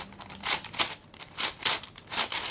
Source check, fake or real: fake